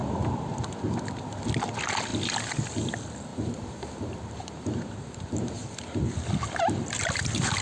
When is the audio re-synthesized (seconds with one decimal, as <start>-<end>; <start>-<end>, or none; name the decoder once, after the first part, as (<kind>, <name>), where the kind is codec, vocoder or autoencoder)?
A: 0.0-0.7 (vocoder, BigVGAN v2); 3.3-5.7